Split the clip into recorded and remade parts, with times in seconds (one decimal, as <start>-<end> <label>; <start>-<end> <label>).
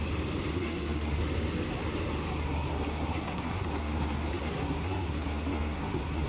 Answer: 0.0-0.5 recorded; 0.5-1.2 remade; 1.2-2.4 recorded; 2.4-6.3 remade